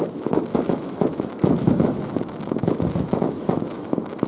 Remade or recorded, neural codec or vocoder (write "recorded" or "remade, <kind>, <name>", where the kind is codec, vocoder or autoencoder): remade, autoencoder, DAC-VAE